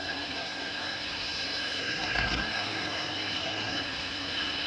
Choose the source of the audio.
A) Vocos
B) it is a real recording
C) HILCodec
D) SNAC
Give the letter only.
D